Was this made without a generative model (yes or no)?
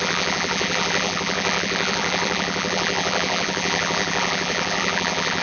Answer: no